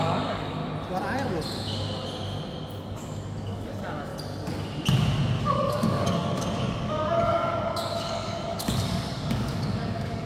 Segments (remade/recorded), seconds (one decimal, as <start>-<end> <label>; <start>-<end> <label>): 0.0-0.6 remade; 0.6-2.8 recorded; 2.8-4.1 remade; 4.1-5.4 recorded; 5.4-10.3 remade